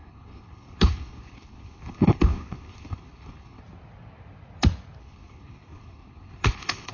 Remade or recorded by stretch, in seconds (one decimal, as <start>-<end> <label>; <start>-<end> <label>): 0.0-3.6 remade; 3.6-5.0 recorded; 5.0-6.9 remade